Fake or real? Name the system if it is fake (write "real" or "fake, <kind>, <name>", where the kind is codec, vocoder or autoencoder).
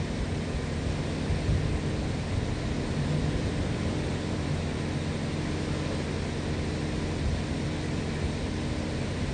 real